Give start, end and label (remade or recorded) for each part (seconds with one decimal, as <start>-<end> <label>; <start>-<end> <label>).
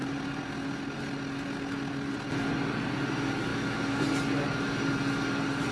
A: 0.0-3.5 recorded; 3.5-4.0 remade; 4.0-5.7 recorded